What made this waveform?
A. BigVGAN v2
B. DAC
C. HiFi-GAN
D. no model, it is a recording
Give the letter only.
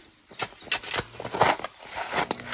D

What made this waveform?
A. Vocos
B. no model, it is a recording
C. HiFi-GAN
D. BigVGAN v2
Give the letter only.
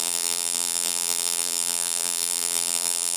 D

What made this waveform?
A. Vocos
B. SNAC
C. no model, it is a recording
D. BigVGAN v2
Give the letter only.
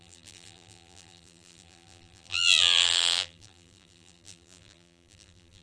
D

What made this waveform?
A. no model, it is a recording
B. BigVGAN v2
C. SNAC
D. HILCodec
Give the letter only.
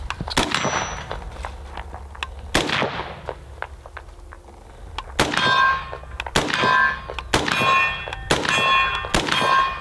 A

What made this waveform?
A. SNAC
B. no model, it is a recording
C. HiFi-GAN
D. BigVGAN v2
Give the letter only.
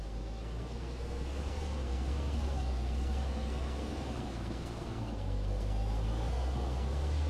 A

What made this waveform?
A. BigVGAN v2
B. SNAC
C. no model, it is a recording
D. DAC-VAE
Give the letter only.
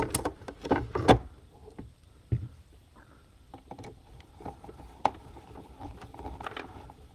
A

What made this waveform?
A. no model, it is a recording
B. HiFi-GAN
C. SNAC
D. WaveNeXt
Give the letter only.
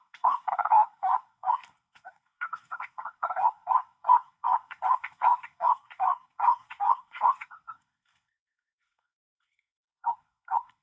C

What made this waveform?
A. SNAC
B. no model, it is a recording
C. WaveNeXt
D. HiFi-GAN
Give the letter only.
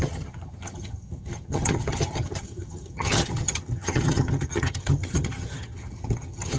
D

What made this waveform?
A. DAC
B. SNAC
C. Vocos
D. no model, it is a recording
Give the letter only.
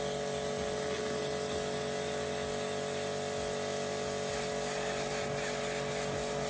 D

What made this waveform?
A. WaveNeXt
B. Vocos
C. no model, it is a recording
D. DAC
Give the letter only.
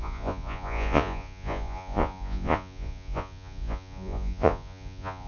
B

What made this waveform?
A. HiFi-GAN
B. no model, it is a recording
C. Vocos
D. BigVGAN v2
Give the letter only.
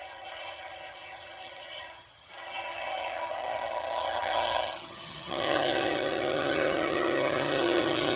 A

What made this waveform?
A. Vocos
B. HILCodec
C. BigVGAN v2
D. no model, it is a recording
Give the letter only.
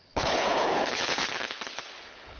B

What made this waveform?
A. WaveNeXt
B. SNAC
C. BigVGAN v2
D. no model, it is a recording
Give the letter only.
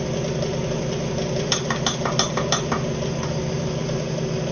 D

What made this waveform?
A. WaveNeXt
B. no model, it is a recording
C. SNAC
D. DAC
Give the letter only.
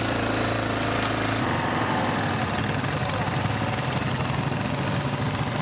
B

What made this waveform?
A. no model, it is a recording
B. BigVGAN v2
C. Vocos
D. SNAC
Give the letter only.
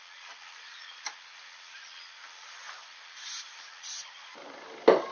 B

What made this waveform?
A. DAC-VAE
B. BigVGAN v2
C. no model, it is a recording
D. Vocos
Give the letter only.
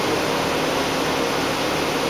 C